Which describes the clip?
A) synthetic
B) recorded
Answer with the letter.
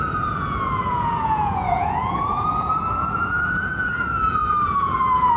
A